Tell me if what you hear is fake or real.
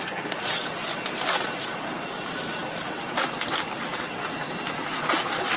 real